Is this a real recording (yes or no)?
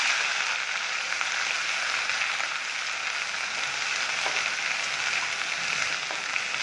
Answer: yes